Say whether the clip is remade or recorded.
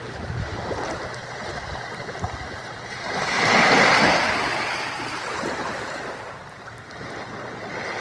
recorded